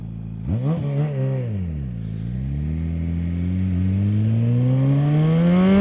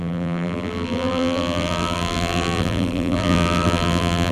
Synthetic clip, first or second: second